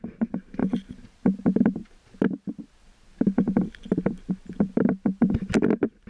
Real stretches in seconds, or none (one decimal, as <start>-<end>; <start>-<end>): 0.0-6.1

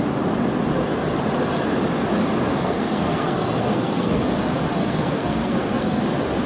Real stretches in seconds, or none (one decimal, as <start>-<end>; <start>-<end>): 0.0-2.5; 4.2-4.8; 6.0-6.5

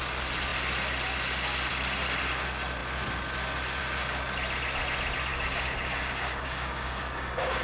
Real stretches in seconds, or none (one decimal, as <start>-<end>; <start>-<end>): 0.0-5.3

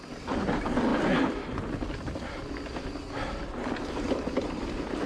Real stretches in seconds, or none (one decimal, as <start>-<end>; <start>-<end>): 0.0-5.1